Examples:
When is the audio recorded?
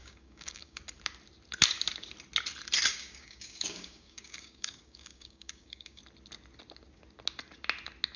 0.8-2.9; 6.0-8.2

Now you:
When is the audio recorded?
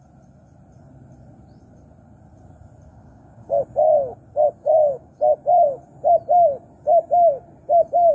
0.0-2.9; 3.6-4.6; 5.2-8.1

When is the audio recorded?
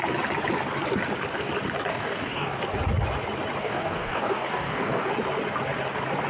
0.0-1.9; 2.6-3.6; 5.1-6.3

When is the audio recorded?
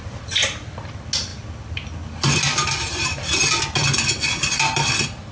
0.0-5.3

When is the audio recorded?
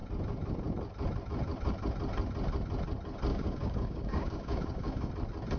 0.0-3.3; 5.1-5.6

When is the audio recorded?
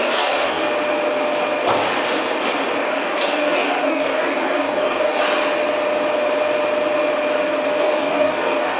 0.6-2.8; 5.2-7.8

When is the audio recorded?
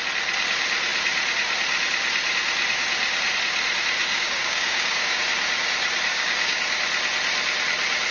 0.0-4.0; 5.2-6.1; 6.6-8.1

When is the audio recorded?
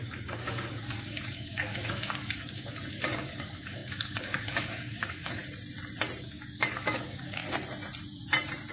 5.4-6.2; 7.4-8.7